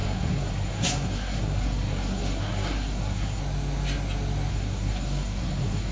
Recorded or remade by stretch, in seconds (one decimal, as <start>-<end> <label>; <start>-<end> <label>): 0.0-3.4 remade; 3.4-4.5 recorded; 4.5-5.9 remade